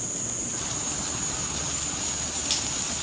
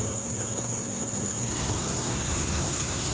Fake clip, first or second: second